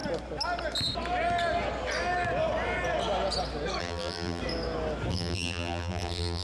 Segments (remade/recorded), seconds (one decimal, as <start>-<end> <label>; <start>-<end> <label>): 0.0-3.8 recorded; 3.8-4.4 remade; 4.4-5.1 recorded; 5.1-6.4 remade